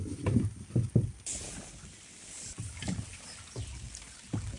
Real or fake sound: real